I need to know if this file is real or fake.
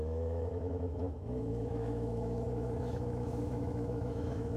fake